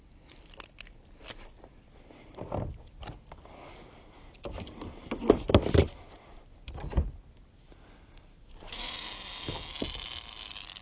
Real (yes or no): yes